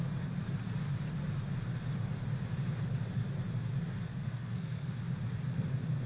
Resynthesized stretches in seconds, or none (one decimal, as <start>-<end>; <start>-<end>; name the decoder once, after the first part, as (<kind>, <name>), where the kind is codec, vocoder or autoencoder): 4.1-5.0 (codec, SNAC)